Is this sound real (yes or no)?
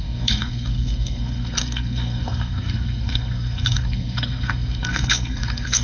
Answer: no